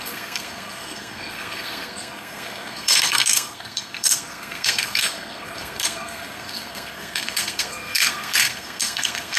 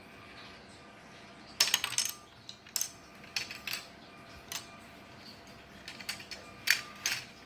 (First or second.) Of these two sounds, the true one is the second